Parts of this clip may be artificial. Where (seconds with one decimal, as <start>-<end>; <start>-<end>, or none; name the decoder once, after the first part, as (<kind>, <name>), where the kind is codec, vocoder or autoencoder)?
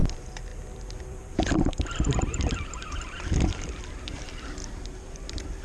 0.0-4.6 (vocoder, BigVGAN v2)